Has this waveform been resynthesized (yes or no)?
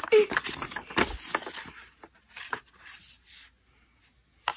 no